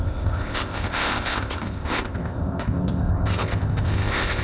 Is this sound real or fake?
fake